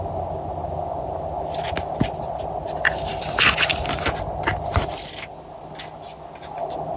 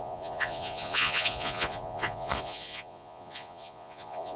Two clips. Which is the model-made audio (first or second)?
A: second